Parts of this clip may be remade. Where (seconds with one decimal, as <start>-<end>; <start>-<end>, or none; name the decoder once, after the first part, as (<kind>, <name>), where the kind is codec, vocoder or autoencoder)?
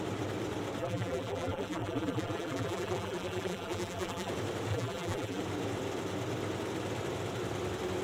0.8-4.3 (vocoder, BigVGAN v2); 4.7-5.4